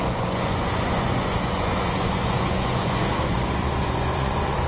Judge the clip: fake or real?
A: fake